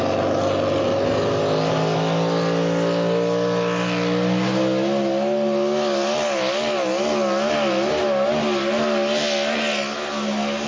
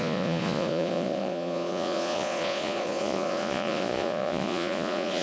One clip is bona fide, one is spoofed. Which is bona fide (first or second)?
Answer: first